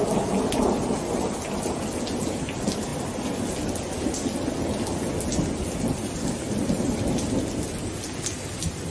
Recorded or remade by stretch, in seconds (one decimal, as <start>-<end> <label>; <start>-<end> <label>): 0.0-8.9 recorded